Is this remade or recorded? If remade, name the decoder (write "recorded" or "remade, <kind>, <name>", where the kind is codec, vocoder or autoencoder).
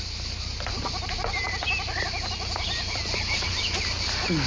recorded